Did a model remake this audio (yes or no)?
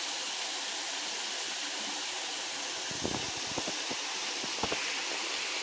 yes